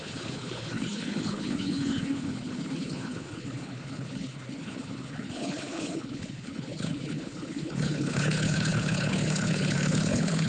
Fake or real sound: fake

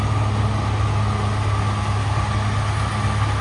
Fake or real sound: real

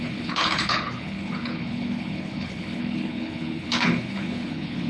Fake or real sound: fake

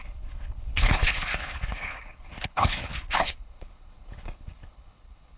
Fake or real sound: fake